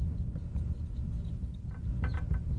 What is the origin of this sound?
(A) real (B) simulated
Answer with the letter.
A